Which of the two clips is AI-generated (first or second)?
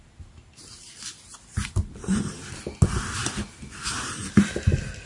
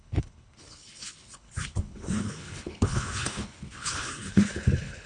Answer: second